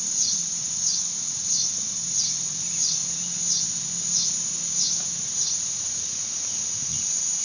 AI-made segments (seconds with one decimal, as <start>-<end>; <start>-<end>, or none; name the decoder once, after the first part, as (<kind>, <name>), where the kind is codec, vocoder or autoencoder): 0.0-2.0 (vocoder, Vocos); 2.5-3.0; 5.1-7.4